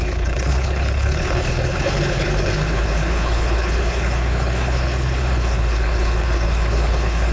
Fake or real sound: fake